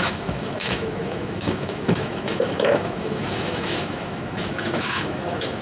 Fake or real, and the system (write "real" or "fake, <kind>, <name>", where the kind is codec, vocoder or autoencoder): fake, autoencoder, DAC-VAE